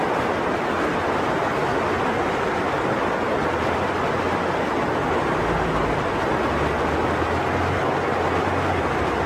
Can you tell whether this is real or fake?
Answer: real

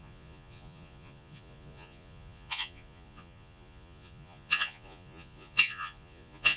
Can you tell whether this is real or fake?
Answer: fake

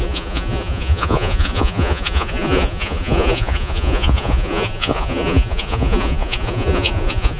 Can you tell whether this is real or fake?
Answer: fake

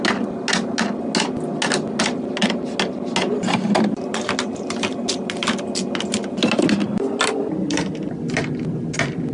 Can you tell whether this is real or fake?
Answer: real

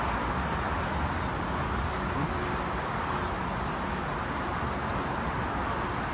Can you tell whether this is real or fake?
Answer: real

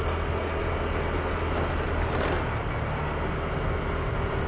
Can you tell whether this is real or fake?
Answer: real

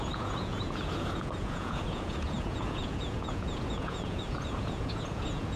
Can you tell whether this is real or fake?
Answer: fake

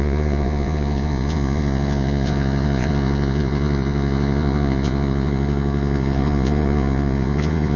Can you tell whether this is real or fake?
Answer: fake